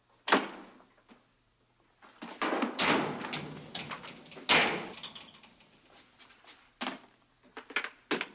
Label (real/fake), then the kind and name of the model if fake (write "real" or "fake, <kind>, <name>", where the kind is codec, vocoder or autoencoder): real